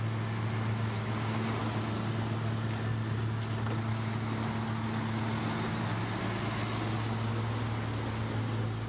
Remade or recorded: recorded